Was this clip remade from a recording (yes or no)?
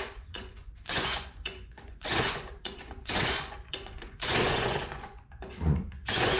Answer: yes